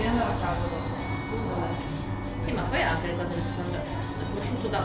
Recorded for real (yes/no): yes